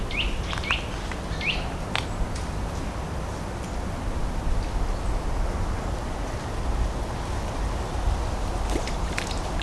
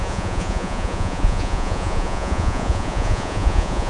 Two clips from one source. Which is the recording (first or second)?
first